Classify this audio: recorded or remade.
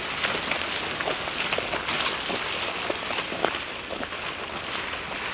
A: recorded